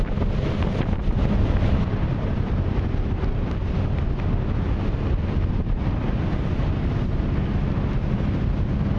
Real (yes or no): yes